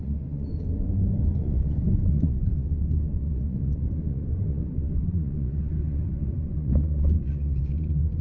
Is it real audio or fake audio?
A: fake